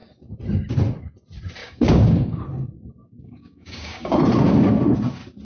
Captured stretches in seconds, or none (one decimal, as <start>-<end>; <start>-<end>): 0.0-1.6; 2.4-3.0; 4.2-5.4